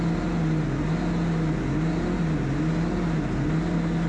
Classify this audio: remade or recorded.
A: recorded